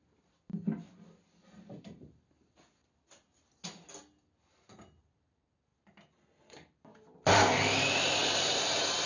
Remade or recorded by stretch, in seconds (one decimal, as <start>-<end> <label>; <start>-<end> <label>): 0.0-9.1 recorded